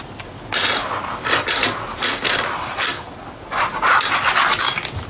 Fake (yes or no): no